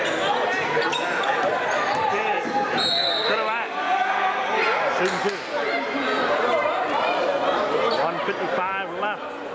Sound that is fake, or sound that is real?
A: real